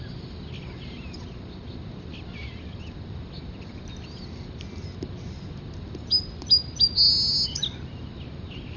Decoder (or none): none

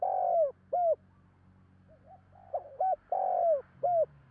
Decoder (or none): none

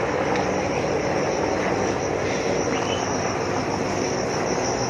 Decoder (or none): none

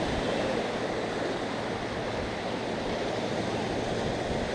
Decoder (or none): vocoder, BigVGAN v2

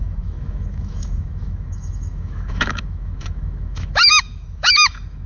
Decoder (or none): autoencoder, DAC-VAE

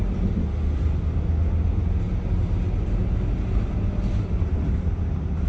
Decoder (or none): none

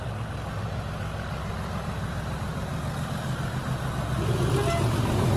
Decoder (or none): none